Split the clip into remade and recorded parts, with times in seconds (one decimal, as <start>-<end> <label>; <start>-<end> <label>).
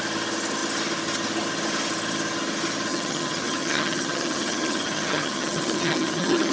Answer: 0.0-2.9 recorded; 2.9-6.5 remade